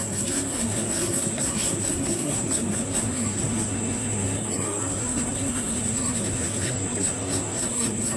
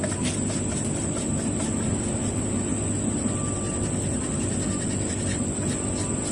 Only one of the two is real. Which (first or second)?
second